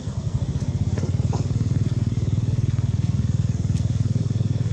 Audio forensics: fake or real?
fake